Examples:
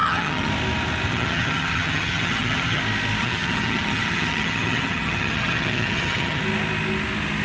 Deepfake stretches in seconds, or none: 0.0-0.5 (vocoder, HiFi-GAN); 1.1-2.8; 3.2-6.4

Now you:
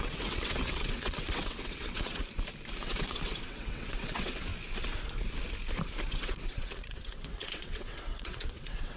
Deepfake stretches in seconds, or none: 0.0-2.2 (vocoder, WaveNeXt); 2.8-4.5; 6.1-9.0

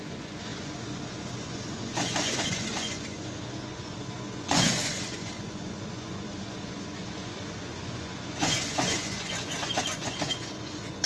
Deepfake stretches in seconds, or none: 0.0-11.1 (vocoder, Vocos)

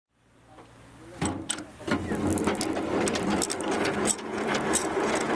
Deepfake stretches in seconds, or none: 3.7-5.4 (vocoder, Vocos)

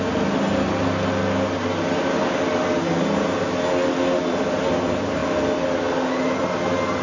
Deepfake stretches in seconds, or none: none

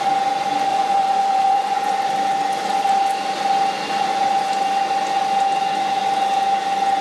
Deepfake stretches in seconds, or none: 0.7-1.9 (vocoder, Vocos)